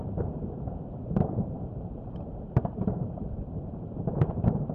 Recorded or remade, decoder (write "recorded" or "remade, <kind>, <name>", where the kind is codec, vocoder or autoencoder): remade, vocoder, BigVGAN v2